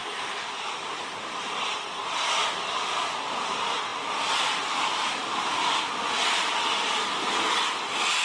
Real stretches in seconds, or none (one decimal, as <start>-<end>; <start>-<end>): 2.0-8.2